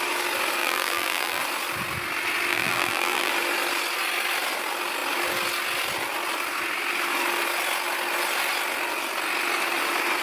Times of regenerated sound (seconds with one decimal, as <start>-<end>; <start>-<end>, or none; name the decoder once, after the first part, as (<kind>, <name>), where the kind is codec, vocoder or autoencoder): 0.6-1.4 (vocoder, BigVGAN v2); 2.5-3.3